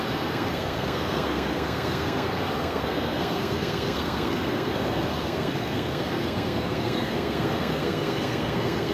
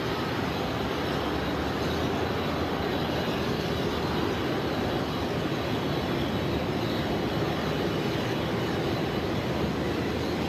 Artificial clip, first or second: first